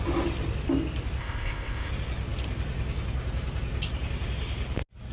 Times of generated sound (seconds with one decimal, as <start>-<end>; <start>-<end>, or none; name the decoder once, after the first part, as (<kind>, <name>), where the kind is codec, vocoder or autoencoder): 1.2-1.9 (codec, ZipCodec)